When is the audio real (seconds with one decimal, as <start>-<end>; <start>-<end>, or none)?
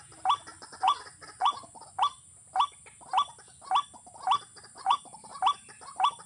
0.0-0.5; 2.0-4.5; 5.0-6.3